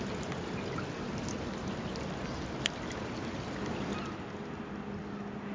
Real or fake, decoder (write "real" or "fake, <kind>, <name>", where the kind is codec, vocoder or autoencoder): real